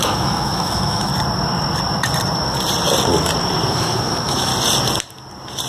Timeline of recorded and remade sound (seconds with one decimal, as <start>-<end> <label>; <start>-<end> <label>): 0.0-1.1 remade; 1.1-3.7 recorded; 3.7-4.5 remade; 4.5-5.7 recorded